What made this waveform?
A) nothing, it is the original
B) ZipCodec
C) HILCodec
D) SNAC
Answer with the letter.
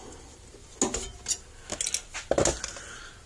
A